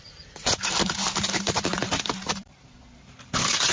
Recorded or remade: remade